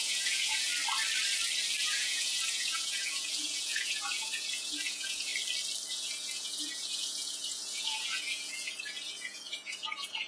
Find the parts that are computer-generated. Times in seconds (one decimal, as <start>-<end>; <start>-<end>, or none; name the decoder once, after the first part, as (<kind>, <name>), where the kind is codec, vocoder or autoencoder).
0.0-0.7 (vocoder, Vocos); 1.8-5.3; 5.9-10.3